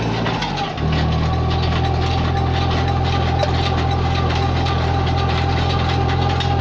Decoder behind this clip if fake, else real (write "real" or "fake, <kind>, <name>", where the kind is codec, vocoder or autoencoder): real